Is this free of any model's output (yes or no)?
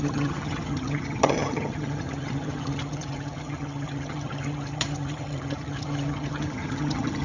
no